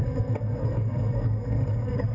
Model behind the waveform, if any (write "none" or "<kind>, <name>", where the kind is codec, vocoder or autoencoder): codec, SNAC